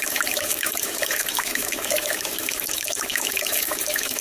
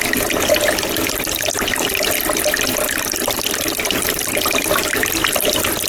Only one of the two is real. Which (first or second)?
second